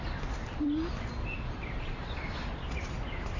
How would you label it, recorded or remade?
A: recorded